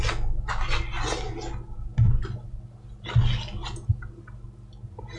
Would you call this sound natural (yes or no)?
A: yes